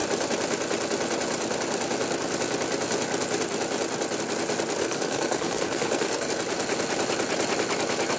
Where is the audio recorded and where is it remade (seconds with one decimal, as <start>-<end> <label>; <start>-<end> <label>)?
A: 0.0-4.8 recorded; 4.8-6.3 remade; 6.3-8.2 recorded